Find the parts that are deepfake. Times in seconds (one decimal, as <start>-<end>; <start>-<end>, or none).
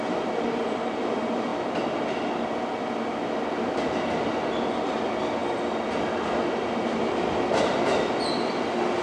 none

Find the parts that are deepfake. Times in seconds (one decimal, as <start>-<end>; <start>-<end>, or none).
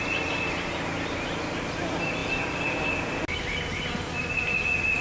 none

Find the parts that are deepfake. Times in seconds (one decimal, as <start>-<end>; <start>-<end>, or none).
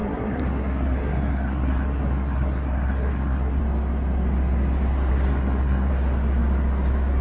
0.0-3.6; 5.1-5.9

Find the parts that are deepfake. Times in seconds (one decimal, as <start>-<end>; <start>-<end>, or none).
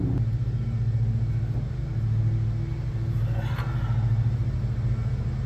none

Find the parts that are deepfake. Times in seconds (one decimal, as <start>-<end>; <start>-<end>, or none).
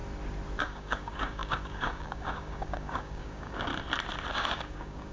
0.6-3.7; 4.3-5.1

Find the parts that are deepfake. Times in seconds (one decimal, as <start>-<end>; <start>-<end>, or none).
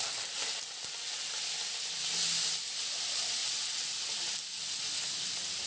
none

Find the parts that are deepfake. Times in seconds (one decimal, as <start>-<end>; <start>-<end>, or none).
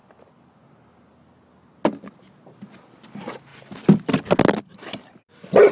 3.1-3.5; 4.7-5.7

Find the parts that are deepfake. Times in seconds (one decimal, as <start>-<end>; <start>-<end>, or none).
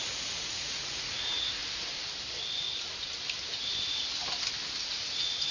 0.0-1.6; 4.9-5.5